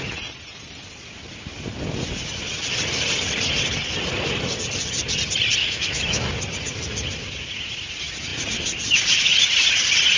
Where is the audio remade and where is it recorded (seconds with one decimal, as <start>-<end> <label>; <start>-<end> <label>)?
0.0-5.6 recorded; 5.6-6.3 remade; 6.3-10.2 recorded